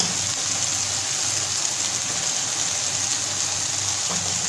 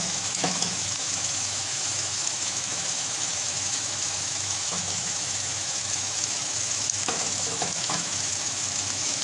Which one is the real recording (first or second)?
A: first